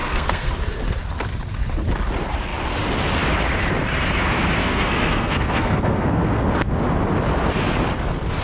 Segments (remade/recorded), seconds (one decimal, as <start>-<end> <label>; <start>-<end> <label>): 0.0-0.5 remade; 0.5-4.6 recorded; 4.6-6.5 remade; 6.5-8.4 recorded